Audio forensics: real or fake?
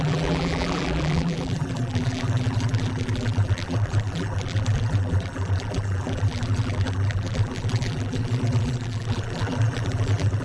fake